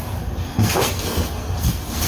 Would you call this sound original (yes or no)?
no